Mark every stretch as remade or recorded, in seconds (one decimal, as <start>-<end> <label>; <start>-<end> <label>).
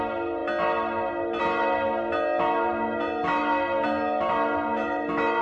0.0-5.4 recorded